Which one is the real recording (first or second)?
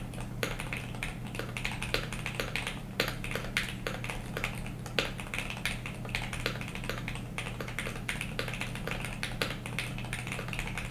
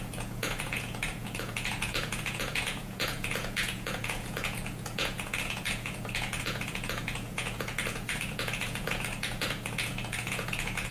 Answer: first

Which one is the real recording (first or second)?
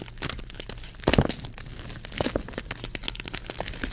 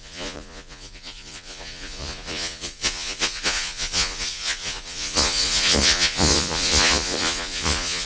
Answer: first